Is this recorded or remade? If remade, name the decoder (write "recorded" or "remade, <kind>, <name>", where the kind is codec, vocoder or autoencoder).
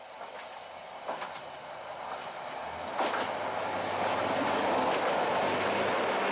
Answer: recorded